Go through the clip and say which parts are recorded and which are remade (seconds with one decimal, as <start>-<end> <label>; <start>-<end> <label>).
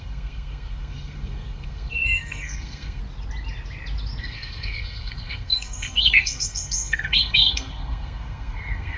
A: 0.0-3.0 remade; 3.0-4.2 recorded; 4.2-9.0 remade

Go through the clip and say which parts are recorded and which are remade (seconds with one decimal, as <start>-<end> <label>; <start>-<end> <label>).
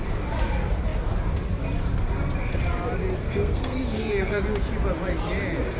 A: 0.0-3.2 recorded; 3.2-4.4 remade; 4.4-5.8 recorded